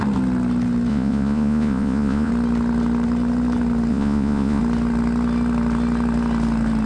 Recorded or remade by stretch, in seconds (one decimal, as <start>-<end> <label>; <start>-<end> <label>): 0.0-0.9 recorded; 0.9-2.3 remade; 2.3-3.9 recorded; 3.9-4.6 remade; 4.6-6.9 recorded